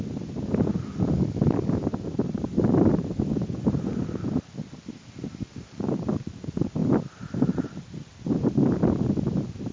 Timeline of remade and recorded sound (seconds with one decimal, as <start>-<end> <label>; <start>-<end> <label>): 0.0-1.9 remade; 1.9-2.4 recorded; 2.4-9.7 remade